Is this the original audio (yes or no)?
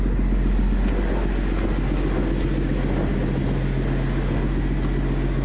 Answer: yes